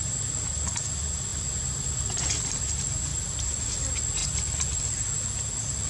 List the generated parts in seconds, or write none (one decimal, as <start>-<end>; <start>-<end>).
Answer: 1.3-2.3; 3.1-3.8